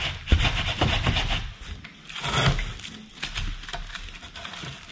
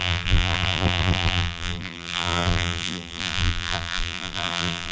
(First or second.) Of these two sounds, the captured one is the first